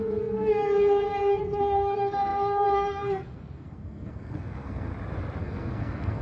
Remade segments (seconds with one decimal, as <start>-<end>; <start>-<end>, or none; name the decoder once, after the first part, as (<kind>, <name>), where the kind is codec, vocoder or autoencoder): 0.0-4.9 (codec, SNAC); 5.4-6.2